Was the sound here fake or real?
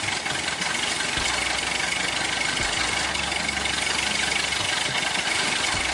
real